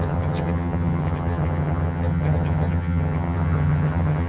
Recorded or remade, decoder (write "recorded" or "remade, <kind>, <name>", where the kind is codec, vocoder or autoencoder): remade, vocoder, HiFi-GAN